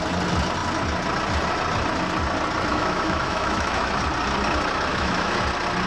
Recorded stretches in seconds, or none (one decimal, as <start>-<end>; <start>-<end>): 0.0-2.7; 3.9-4.9; 5.4-5.9

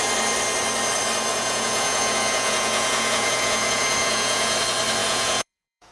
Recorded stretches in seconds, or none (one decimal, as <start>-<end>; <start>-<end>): 0.0-1.3; 4.6-5.0